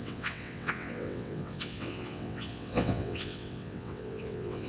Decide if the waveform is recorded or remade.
remade